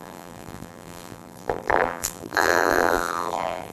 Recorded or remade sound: remade